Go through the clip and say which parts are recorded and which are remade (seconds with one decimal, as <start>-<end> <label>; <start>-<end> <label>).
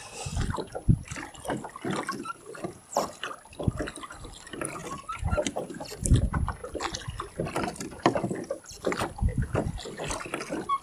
0.0-10.8 recorded